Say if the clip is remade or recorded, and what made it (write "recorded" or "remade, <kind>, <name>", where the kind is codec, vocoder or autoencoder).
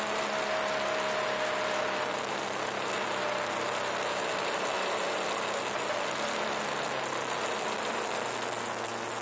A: recorded